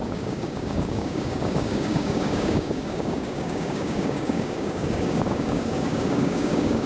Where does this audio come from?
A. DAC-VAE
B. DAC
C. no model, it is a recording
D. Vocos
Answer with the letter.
B